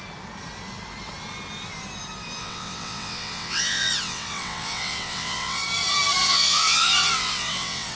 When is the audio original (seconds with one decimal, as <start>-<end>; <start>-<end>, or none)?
0.0-2.4; 5.6-6.2